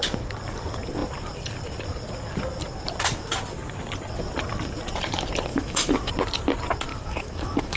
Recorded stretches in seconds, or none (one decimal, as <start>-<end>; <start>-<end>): 0.0-5.5; 6.1-6.9